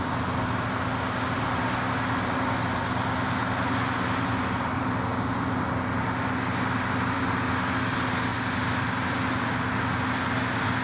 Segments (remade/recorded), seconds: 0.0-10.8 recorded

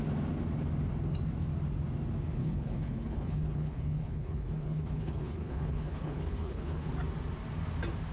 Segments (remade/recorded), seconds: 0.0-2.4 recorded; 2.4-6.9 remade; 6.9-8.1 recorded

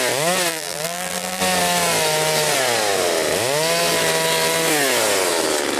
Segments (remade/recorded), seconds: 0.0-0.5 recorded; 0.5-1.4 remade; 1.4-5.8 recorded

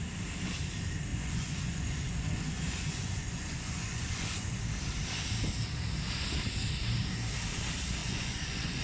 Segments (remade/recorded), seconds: 0.0-1.1 recorded; 1.1-4.6 remade; 4.6-8.0 recorded; 8.0-8.8 remade